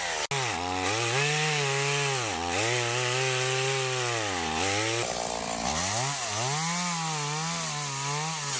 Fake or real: real